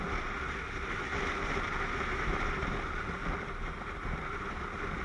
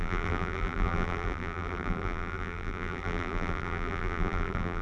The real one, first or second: first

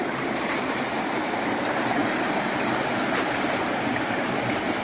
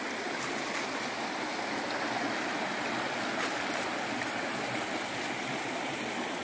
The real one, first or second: second